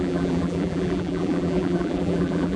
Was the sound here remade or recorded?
remade